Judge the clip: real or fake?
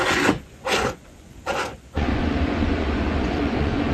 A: fake